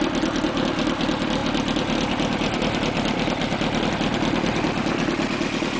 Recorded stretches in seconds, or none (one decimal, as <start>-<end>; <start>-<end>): 0.0-5.8